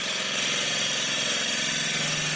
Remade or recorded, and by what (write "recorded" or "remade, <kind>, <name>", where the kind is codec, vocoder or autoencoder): recorded